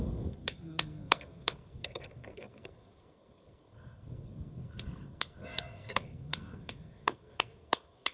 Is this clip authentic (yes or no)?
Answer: no